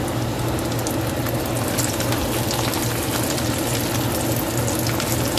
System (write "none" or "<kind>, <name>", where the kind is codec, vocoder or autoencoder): none